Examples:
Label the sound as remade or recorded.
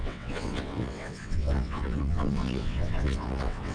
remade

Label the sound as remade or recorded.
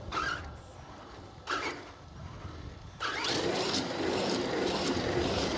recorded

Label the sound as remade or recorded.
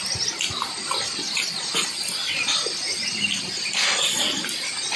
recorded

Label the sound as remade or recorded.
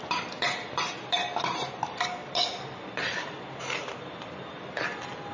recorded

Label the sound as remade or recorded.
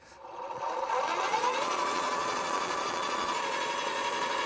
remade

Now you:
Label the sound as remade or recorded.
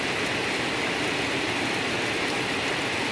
recorded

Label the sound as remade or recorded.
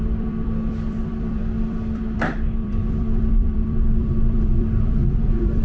remade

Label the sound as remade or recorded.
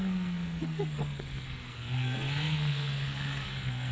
remade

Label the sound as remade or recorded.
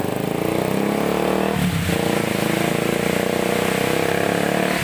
recorded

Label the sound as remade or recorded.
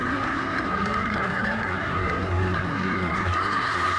remade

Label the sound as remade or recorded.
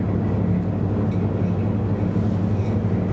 recorded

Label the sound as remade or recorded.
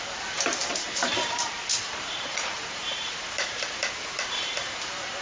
remade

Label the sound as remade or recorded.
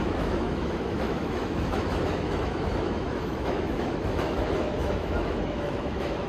remade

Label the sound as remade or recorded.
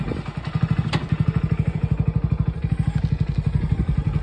recorded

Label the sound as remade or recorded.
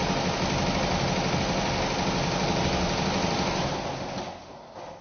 recorded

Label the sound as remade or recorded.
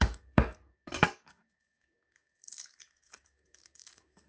remade